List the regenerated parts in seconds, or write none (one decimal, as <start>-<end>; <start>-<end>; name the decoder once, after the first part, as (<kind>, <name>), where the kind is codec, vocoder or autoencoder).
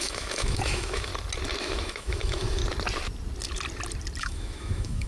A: 0.0-1.1 (autoencoder, DAC-VAE); 1.6-2.6; 4.2-5.1